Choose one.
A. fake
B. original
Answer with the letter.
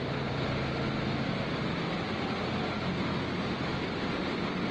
B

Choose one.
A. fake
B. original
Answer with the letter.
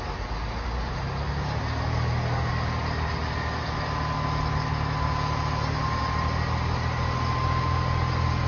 B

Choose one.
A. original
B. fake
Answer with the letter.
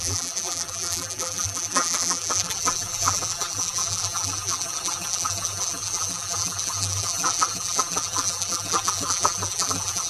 B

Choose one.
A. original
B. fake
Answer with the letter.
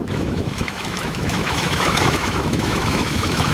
B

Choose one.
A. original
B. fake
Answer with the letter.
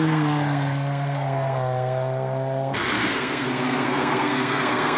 B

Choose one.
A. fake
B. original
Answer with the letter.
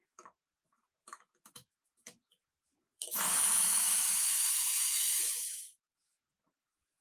A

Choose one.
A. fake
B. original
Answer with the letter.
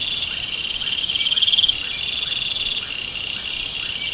B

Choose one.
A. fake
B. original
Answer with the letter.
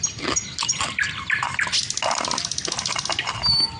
B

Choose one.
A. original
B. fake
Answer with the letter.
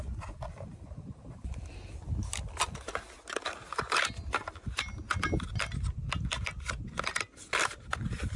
A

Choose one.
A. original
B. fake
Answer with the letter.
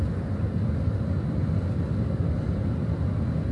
A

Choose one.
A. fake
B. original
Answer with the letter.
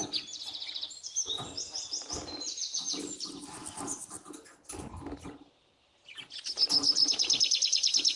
B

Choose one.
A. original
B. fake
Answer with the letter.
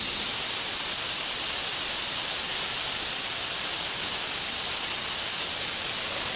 A